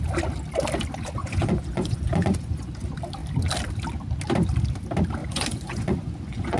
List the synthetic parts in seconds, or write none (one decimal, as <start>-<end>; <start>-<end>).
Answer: 1.2-2.7; 5.2-6.6